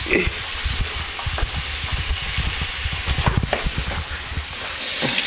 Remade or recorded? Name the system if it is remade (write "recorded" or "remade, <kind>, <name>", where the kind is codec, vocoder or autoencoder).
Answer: recorded